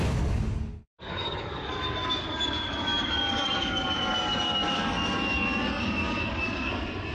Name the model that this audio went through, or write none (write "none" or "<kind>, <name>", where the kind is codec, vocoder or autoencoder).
codec, DAC